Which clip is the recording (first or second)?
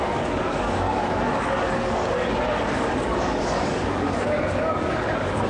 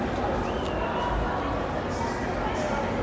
second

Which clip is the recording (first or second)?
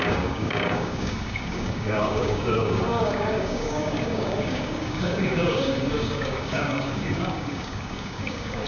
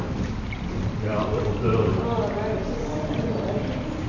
second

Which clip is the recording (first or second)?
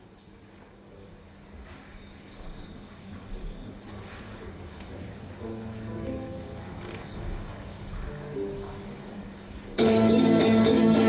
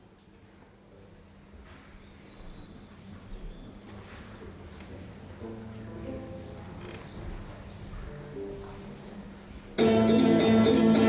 second